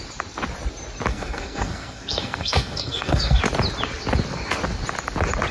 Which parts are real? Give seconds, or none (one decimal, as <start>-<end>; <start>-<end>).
0.0-1.1; 3.4-5.5